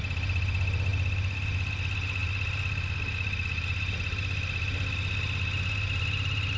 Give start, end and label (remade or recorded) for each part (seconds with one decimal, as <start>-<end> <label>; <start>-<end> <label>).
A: 0.0-6.6 recorded

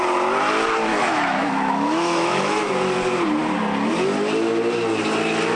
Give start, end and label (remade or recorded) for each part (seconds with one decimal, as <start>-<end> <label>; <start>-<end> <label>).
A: 0.0-0.9 recorded; 0.9-2.7 remade; 2.7-5.6 recorded